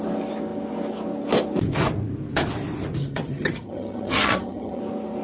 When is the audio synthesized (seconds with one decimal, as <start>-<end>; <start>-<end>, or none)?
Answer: 3.0-4.8